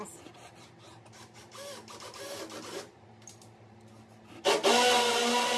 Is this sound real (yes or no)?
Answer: yes